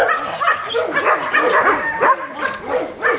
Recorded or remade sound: recorded